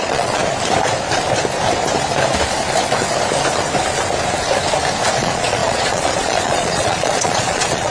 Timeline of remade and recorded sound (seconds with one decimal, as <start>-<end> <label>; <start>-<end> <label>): 0.0-0.4 remade; 0.4-5.1 recorded; 5.1-7.9 remade